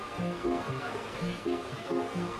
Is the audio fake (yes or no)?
yes